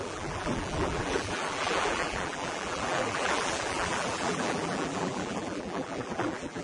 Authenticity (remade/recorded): remade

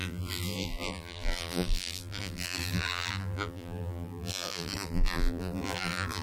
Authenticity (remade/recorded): remade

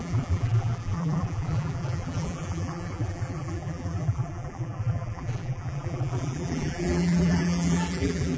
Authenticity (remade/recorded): remade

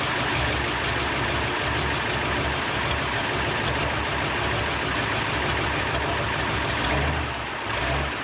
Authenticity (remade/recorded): recorded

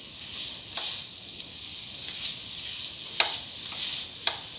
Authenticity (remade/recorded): recorded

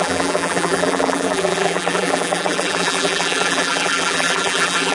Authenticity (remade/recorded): remade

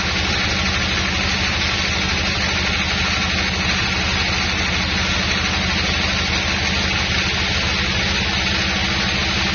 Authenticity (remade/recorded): recorded